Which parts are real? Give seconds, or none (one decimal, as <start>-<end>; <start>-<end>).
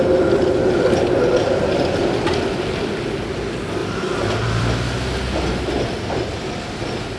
0.0-3.8; 4.6-7.2